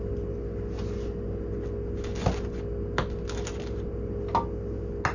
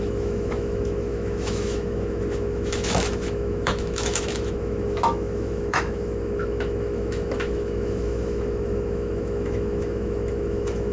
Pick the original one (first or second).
first